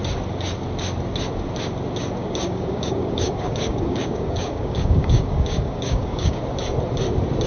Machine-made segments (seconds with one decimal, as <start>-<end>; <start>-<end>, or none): 2.2-6.4